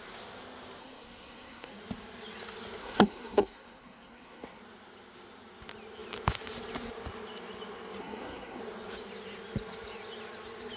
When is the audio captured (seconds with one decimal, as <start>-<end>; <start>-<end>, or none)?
0.0-0.8; 1.8-2.8; 4.6-8.0; 8.6-10.8